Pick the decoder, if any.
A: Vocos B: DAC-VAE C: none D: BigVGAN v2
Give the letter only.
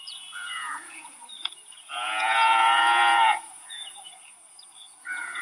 A